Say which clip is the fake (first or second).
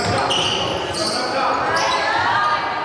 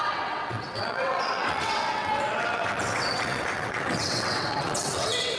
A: second